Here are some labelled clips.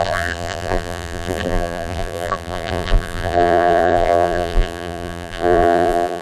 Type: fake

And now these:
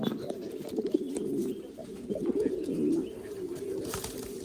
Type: fake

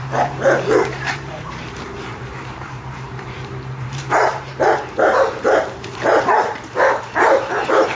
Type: fake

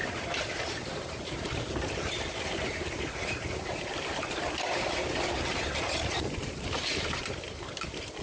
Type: fake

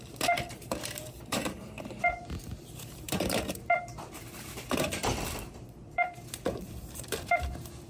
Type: fake